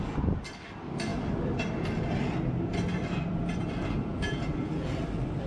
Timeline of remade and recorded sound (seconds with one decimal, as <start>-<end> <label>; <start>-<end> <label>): 0.0-4.1 recorded; 4.1-4.9 remade; 4.9-5.5 recorded